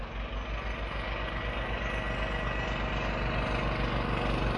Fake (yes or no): no